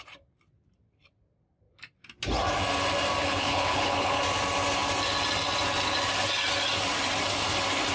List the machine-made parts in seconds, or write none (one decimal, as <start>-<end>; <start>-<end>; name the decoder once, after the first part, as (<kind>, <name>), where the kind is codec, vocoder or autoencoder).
3.2-4.2 (codec, HILCodec)